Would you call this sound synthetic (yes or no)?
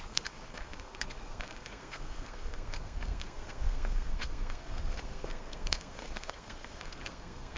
yes